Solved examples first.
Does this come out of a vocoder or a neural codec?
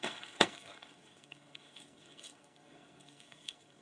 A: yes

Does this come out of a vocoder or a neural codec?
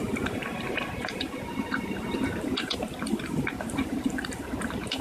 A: yes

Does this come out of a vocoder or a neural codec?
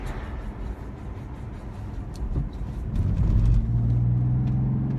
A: no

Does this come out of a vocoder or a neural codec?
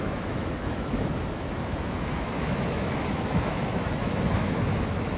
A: yes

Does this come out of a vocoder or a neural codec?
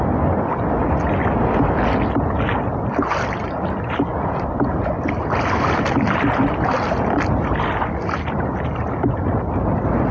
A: no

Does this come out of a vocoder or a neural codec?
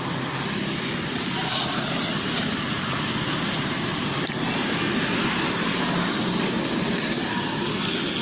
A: no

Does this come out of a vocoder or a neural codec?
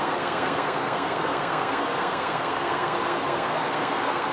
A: yes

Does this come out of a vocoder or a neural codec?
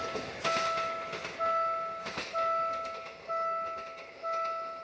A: no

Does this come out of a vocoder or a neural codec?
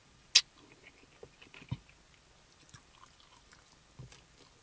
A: no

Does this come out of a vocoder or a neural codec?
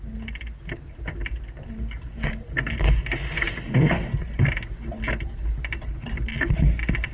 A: no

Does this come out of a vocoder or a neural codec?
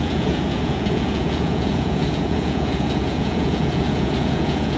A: yes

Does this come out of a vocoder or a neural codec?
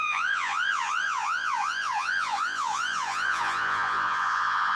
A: yes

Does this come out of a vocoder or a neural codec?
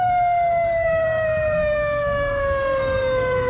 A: yes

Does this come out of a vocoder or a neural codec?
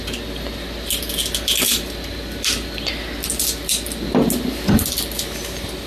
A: no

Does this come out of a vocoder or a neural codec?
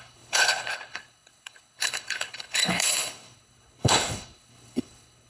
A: yes